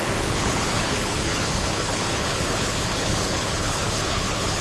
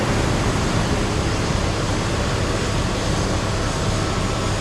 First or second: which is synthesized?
first